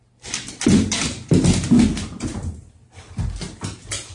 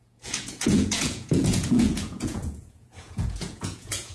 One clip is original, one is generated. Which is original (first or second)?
first